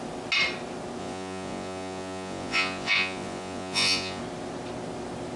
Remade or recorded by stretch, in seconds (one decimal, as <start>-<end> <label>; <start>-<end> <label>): 0.0-1.0 recorded; 1.0-4.2 remade; 4.2-5.4 recorded